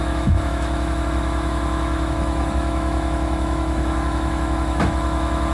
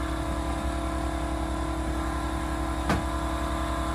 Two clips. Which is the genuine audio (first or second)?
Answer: second